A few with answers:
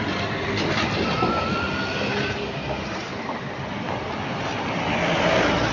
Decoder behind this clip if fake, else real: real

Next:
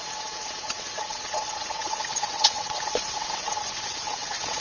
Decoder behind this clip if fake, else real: fake, vocoder, WaveNeXt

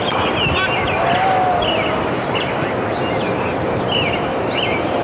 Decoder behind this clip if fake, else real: real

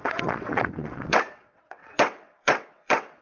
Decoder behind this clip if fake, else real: fake, vocoder, WaveNeXt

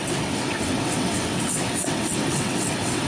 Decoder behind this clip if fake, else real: fake, vocoder, WaveNeXt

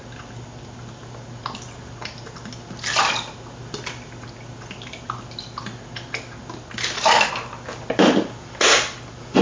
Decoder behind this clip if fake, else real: real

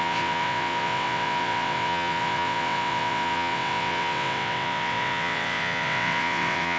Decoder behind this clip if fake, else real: fake, vocoder, WaveNeXt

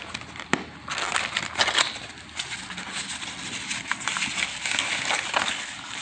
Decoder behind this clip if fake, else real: real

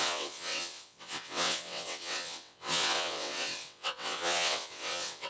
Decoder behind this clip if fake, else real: fake, vocoder, WaveNeXt